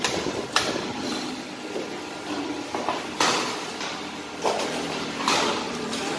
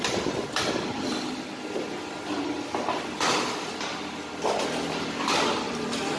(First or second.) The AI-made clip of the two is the first